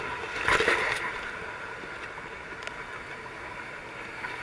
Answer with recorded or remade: recorded